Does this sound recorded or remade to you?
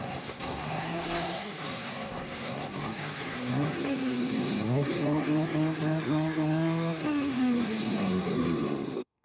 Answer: remade